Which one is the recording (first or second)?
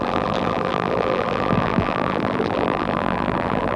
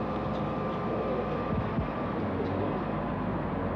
second